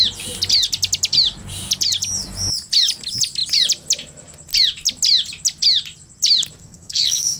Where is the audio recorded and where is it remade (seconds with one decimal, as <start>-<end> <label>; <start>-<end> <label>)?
0.0-6.6 recorded; 6.6-7.4 remade